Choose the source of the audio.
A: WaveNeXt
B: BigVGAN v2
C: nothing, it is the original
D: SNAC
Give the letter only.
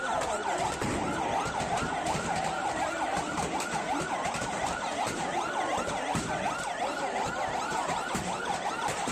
B